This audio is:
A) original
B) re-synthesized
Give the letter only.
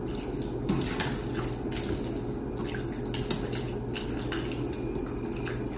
A